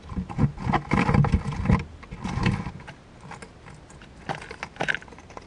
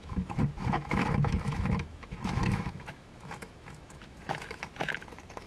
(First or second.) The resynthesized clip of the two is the second